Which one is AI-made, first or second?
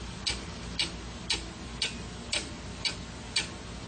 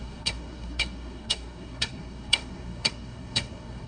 second